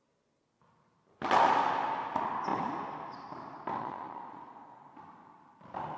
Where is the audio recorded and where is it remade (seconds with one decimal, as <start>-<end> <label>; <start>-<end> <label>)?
0.0-3.8 recorded; 3.8-4.8 remade; 4.8-6.0 recorded